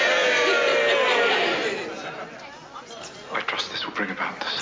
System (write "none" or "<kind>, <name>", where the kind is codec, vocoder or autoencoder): none